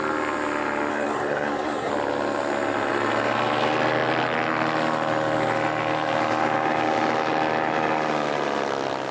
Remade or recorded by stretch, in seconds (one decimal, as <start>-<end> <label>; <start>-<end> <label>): 0.0-0.9 recorded; 0.9-1.9 remade; 1.9-9.1 recorded